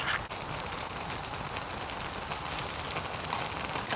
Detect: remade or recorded recorded